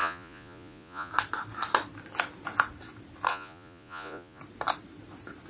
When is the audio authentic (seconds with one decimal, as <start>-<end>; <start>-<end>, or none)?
1.1-3.3; 4.4-5.5